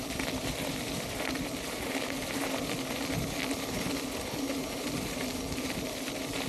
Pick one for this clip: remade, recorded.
recorded